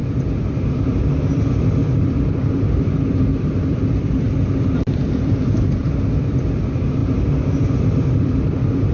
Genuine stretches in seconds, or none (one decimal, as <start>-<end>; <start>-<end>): none